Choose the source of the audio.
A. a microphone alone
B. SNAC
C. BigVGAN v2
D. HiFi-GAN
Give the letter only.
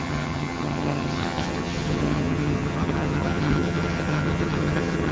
D